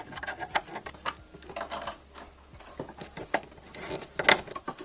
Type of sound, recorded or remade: recorded